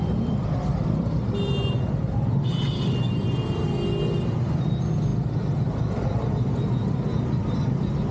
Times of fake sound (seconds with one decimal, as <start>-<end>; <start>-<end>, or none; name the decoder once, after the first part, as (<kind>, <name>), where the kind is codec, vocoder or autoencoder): none